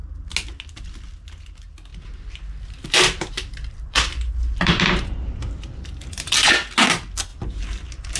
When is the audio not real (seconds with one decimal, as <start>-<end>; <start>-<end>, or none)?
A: 1.9-6.1; 7.3-8.2